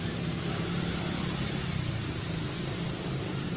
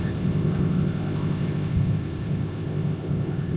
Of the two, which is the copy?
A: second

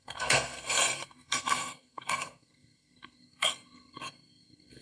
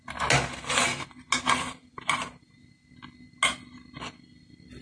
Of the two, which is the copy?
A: first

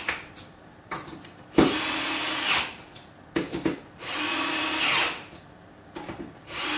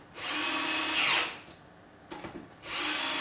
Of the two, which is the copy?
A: first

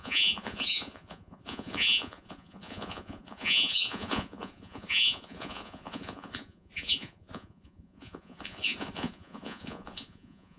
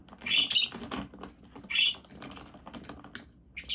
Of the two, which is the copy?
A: first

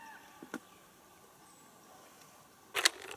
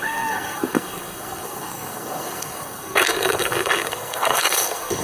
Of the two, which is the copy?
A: second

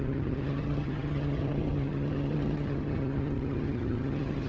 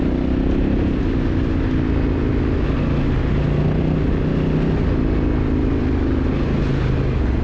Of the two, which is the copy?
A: first